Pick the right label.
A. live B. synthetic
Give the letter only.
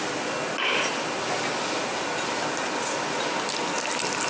A